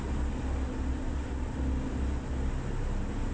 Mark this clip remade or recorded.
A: recorded